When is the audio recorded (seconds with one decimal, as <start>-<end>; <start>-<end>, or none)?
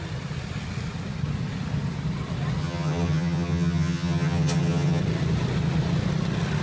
0.0-2.6; 5.0-6.6